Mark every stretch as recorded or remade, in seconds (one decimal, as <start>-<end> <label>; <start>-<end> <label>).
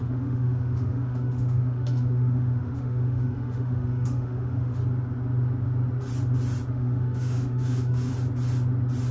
0.0-4.8 remade; 4.8-6.7 recorded; 6.7-8.1 remade; 8.1-9.1 recorded